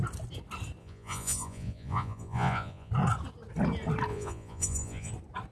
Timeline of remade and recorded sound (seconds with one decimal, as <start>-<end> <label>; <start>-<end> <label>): 0.0-0.8 recorded; 0.8-2.9 remade; 2.9-4.1 recorded; 4.1-5.1 remade; 5.1-5.5 recorded